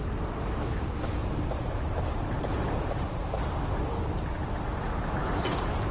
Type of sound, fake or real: real